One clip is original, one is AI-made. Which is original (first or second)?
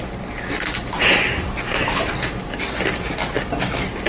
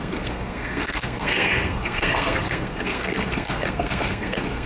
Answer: first